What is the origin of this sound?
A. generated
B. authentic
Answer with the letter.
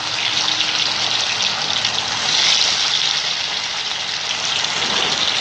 B